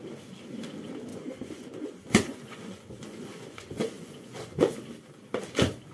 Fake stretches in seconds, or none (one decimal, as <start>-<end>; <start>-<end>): 1.1-4.6